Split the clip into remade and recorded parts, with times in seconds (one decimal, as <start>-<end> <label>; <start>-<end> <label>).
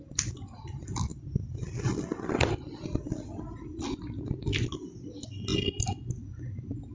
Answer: 0.0-5.5 recorded; 5.5-6.1 remade; 6.1-6.9 recorded